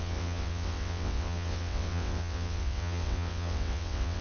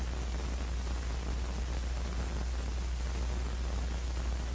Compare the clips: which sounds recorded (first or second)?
second